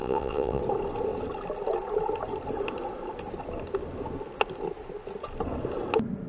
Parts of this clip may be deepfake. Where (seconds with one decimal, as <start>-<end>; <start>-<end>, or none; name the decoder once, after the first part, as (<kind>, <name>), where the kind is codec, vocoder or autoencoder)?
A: 0.0-0.6 (vocoder, WaveNeXt)